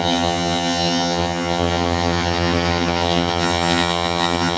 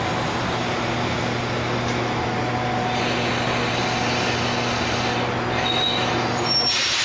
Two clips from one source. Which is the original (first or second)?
second